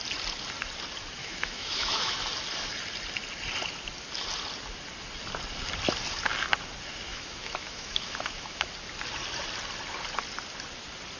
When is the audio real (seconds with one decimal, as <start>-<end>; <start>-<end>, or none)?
0.0-1.2; 2.2-7.1; 8.7-11.2